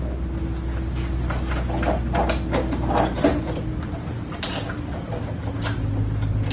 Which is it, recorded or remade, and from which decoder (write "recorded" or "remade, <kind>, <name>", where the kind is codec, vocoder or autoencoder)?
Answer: recorded